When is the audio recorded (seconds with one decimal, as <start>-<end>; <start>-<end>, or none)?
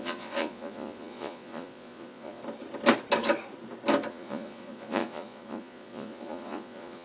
2.4-4.1